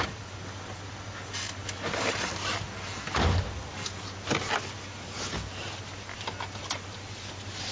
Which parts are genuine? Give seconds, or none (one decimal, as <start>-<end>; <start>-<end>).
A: 0.0-7.7